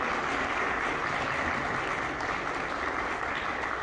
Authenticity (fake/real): real